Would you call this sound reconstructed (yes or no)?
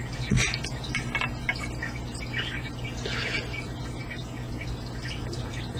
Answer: no